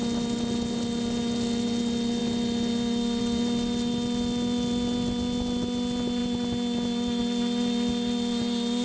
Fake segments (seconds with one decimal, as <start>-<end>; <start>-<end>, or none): none